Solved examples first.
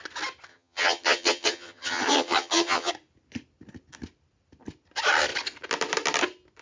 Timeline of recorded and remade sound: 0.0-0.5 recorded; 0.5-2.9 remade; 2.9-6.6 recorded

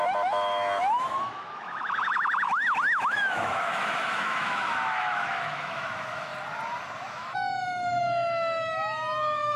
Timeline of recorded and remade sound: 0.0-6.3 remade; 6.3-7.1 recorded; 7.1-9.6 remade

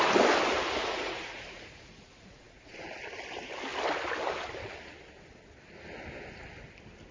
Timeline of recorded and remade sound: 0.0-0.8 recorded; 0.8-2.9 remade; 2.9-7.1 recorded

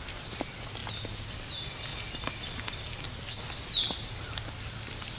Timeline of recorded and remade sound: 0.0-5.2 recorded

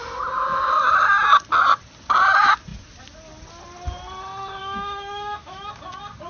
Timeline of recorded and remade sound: 0.0-4.6 recorded; 4.6-5.7 remade; 5.7-6.3 recorded